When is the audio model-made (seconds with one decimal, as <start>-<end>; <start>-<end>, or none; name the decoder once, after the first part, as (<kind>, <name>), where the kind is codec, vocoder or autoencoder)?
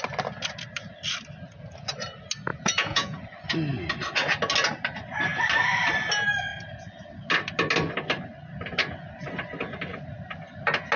2.5-3.2 (vocoder, Vocos)